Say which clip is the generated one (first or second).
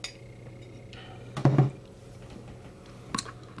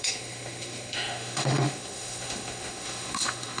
second